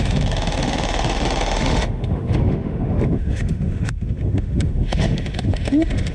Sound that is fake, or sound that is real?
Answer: fake